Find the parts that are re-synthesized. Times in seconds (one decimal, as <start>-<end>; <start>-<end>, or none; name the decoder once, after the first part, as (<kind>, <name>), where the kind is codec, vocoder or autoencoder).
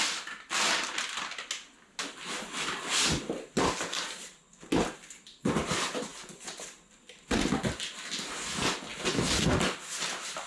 none